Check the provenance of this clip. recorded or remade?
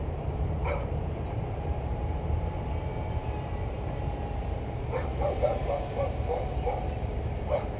remade